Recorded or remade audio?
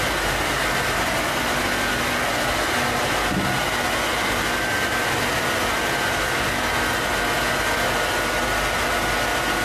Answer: recorded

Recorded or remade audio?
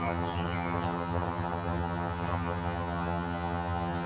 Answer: remade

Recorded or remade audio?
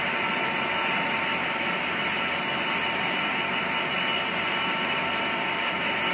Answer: recorded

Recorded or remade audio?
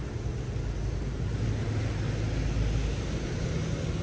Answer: recorded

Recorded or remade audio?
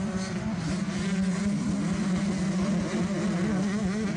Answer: recorded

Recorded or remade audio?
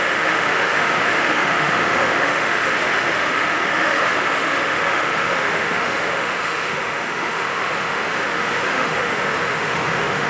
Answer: remade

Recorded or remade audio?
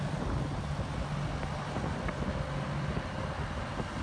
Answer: recorded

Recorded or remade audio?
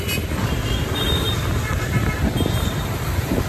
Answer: recorded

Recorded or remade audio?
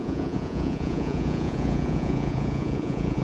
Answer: remade